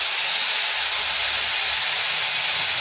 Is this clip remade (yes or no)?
no